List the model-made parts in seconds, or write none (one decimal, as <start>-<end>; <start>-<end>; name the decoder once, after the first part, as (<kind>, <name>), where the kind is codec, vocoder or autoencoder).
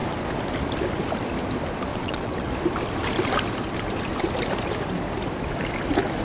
1.9-2.5 (vocoder, WaveNeXt)